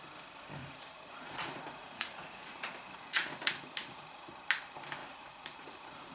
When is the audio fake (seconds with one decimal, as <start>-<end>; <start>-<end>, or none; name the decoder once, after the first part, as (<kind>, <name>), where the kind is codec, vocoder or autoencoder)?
0.6-4.3 (vocoder, Vocos); 5.0-6.1